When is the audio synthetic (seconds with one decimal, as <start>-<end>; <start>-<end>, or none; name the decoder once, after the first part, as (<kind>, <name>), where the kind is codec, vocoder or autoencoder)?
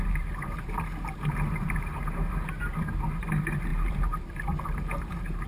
0.0-5.5 (vocoder, BigVGAN v2)